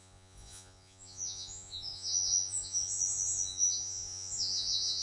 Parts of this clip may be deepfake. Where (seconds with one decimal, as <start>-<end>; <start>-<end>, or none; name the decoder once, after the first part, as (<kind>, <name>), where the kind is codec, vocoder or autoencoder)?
0.0-5.0 (vocoder, Vocos)